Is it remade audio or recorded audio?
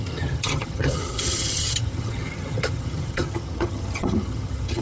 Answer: remade